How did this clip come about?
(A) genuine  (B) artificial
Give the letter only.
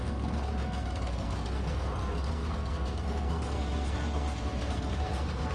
B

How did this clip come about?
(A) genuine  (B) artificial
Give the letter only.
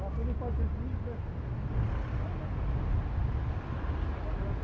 A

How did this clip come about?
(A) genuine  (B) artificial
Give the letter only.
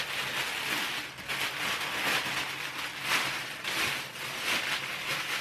A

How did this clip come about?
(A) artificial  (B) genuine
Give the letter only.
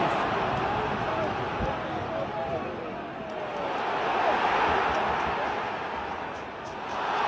B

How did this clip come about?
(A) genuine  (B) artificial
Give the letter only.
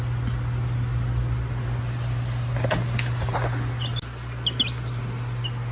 A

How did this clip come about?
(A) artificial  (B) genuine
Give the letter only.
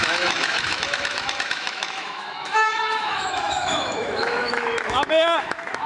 A